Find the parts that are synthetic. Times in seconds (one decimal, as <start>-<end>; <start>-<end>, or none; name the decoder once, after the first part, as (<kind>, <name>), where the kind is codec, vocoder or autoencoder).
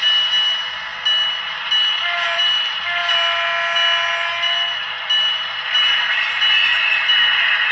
none